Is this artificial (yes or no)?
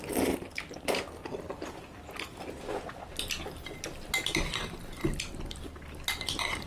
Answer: no